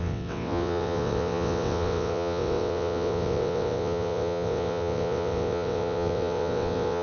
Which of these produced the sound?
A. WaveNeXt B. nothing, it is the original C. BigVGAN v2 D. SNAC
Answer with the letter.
A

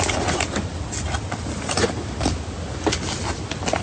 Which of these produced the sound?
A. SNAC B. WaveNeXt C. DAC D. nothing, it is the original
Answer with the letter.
D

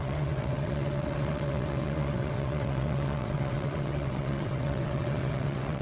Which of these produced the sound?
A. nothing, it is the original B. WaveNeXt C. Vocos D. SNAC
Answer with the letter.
B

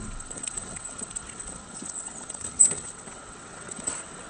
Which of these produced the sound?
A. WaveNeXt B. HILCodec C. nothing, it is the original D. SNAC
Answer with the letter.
A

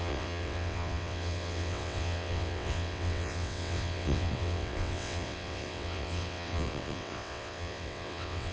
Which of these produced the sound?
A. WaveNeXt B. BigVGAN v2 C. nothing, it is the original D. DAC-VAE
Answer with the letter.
A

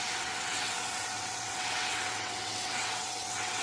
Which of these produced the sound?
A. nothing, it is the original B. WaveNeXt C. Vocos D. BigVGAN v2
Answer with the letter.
B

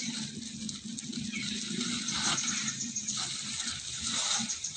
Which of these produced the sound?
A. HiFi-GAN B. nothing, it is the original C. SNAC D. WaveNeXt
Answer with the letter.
B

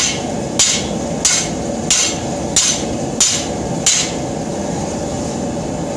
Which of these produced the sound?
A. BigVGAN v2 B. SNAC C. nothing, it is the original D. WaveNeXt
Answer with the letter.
C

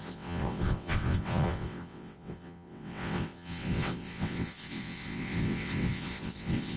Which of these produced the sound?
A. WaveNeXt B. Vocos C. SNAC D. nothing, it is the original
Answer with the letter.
A